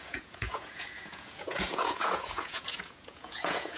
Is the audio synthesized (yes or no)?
yes